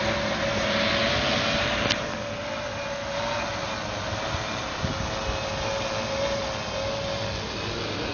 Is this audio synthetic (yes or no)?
no